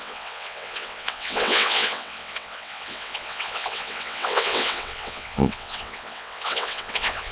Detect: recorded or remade remade